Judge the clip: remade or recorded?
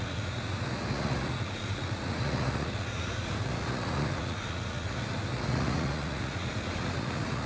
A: remade